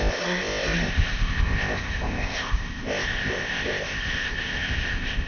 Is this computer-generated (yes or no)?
yes